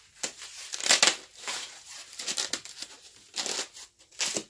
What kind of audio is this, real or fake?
real